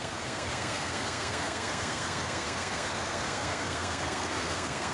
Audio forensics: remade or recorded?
remade